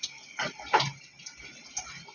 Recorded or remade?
recorded